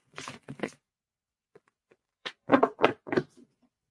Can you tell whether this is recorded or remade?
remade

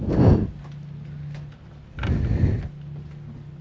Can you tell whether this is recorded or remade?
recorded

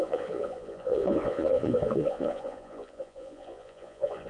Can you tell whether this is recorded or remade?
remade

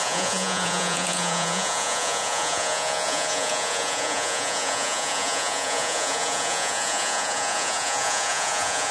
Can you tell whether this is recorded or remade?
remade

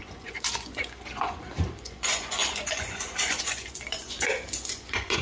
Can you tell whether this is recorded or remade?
remade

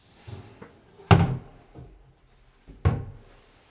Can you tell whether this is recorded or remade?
recorded